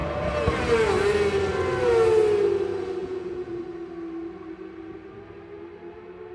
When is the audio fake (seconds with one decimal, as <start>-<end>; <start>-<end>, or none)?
3.0-3.6